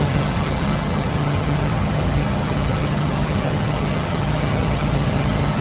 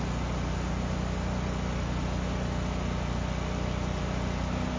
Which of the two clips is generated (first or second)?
first